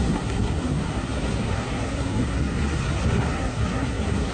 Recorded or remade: remade